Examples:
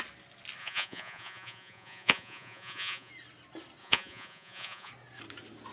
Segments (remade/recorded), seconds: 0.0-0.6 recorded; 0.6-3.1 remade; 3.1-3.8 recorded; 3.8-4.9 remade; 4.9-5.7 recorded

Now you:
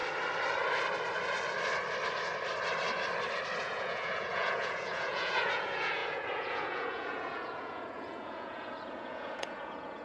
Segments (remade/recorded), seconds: 0.0-3.6 recorded; 3.6-10.0 remade